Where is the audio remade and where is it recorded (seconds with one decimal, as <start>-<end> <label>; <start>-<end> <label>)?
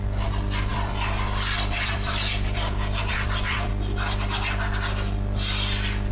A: 0.0-0.7 recorded; 0.7-3.7 remade; 3.7-6.1 recorded